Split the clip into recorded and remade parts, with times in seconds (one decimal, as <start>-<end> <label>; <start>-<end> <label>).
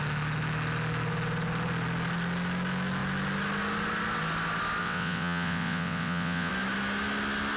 0.0-4.8 recorded; 4.8-6.5 remade; 6.5-7.6 recorded